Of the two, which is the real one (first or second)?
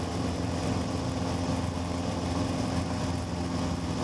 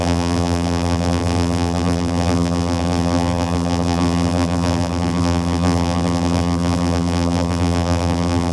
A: first